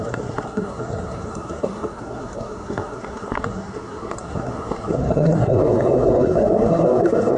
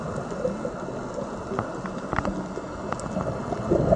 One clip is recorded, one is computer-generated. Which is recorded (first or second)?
second